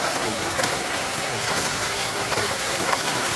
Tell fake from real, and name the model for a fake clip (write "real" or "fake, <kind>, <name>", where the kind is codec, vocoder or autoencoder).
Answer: fake, codec, SNAC